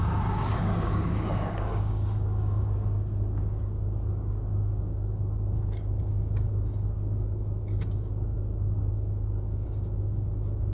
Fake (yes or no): yes